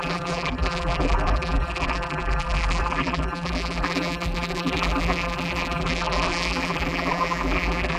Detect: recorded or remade remade